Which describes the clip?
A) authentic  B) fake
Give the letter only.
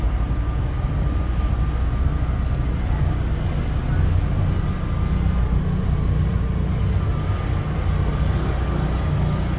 A